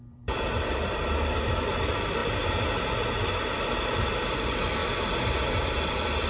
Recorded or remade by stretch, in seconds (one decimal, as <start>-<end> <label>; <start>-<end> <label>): 0.0-2.2 remade; 2.2-3.4 recorded; 3.4-4.8 remade; 4.8-5.5 recorded; 5.5-6.3 remade